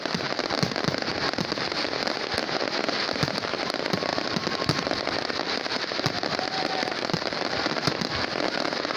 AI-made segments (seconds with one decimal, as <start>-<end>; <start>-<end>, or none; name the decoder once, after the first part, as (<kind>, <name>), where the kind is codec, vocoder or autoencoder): 4.1-7.9 (vocoder, BigVGAN v2)